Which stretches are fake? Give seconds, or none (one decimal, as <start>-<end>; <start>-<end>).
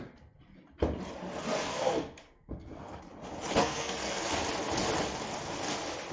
1.7-3.0; 3.6-4.3